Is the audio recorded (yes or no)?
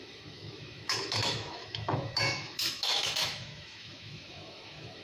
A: no